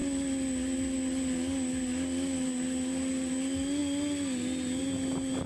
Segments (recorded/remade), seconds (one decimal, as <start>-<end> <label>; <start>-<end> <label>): 0.0-5.5 recorded